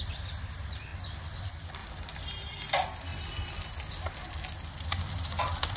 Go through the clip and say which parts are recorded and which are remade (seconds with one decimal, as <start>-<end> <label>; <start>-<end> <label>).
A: 0.0-0.9 remade; 0.9-1.4 recorded; 1.4-3.1 remade; 3.1-4.8 recorded; 4.8-5.8 remade